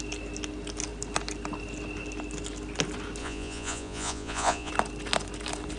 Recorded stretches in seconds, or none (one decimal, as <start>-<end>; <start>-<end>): 0.0-3.2; 4.7-5.8